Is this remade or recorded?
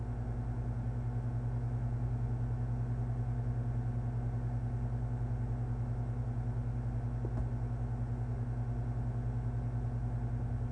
recorded